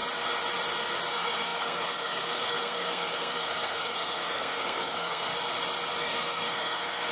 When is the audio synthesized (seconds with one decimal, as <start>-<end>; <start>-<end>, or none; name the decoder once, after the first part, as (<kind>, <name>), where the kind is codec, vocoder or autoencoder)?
1.1-5.3 (codec, SNAC); 6.0-7.1